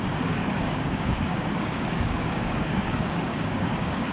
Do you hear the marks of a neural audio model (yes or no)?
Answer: yes